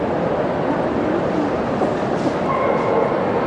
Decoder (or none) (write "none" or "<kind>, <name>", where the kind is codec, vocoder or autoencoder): none